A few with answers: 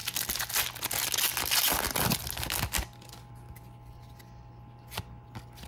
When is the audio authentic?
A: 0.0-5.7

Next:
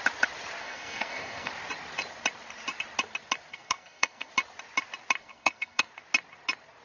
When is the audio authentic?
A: 0.0-0.6; 1.5-3.5; 4.3-5.2; 5.9-6.8

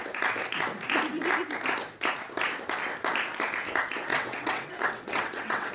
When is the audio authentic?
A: 0.0-4.1

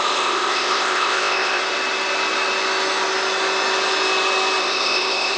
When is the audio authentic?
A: 1.6-4.6